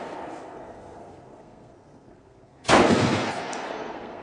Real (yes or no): no